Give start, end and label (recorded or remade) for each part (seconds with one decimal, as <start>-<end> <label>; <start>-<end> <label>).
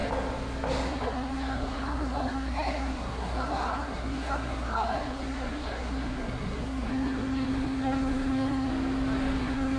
0.0-0.9 recorded; 0.9-8.7 remade; 8.7-9.4 recorded; 9.4-9.8 remade